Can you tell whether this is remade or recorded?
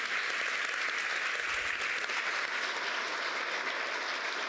recorded